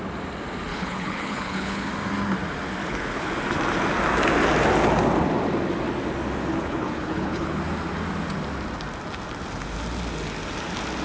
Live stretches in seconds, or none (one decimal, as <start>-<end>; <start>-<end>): 0.0-0.7; 1.9-2.8; 3.3-6.5; 7.6-11.0